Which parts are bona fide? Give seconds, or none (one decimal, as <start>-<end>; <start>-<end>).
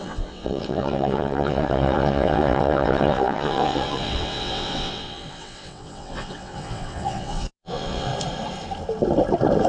8.1-9.7